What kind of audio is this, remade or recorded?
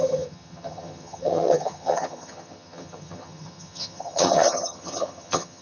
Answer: remade